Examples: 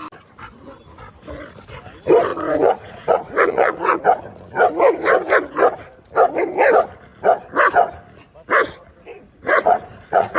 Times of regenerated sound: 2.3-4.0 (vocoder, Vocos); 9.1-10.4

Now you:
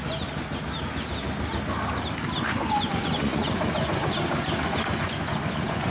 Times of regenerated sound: 2.5-5.9 (vocoder, Vocos)

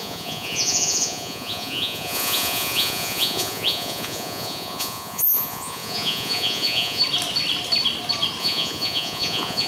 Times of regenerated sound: 0.0-7.0 (vocoder, Vocos); 8.4-9.7

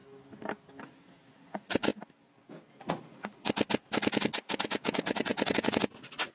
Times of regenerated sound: 1.3-1.9 (vocoder, Vocos); 2.8-3.3; 4.4-6.3